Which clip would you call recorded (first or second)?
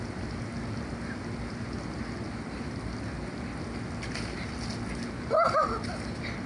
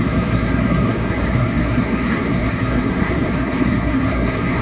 first